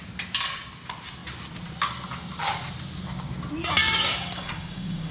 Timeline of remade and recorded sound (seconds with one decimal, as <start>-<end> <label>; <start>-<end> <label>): 0.0-3.8 recorded; 3.8-5.1 remade